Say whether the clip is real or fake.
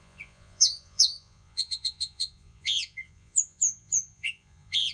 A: fake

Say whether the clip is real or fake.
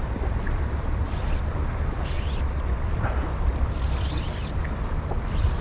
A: real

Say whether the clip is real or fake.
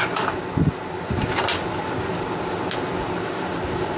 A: real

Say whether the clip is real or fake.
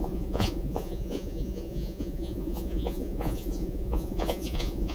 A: fake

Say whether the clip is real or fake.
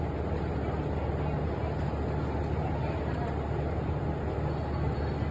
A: real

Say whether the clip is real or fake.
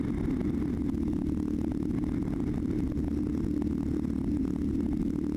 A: real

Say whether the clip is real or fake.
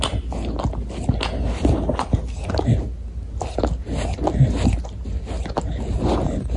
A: real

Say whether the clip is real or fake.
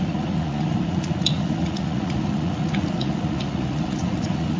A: fake